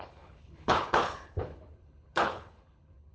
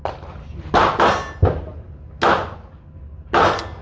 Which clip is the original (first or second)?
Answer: second